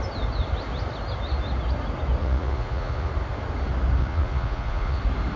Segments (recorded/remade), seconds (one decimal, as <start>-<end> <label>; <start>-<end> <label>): 0.0-2.2 recorded; 2.2-3.1 remade; 3.1-4.0 recorded; 4.0-5.0 remade; 5.0-5.4 recorded

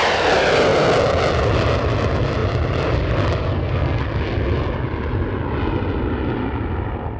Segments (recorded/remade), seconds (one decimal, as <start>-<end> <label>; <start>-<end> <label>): 0.0-3.5 recorded; 3.5-4.0 remade; 4.0-7.2 recorded